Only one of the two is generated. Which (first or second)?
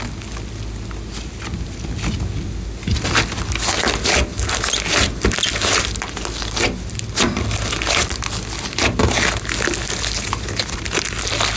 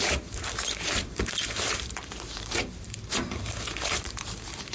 second